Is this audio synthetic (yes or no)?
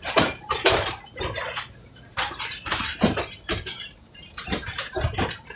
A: yes